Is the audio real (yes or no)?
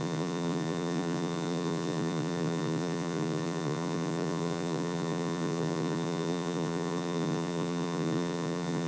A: no